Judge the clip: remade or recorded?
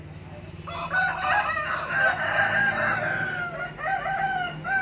recorded